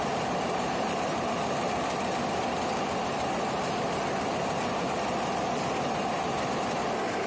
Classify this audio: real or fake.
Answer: real